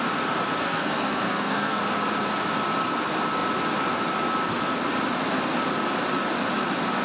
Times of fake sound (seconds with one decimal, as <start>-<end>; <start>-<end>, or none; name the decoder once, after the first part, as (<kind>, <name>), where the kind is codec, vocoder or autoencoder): 0.6-1.8 (codec, SNAC)